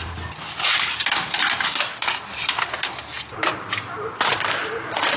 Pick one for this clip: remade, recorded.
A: recorded